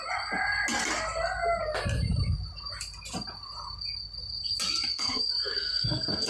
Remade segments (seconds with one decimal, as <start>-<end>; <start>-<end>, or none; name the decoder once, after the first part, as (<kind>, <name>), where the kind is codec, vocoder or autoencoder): 4.9-6.3 (codec, SNAC)